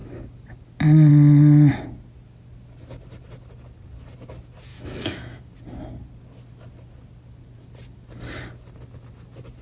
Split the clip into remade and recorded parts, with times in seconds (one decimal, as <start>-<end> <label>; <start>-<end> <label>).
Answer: 0.0-4.7 recorded; 4.7-5.5 remade; 5.5-9.6 recorded